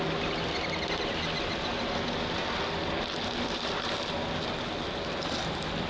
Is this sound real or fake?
real